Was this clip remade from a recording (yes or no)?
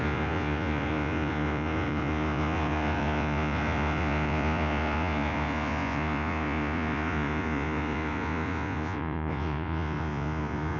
yes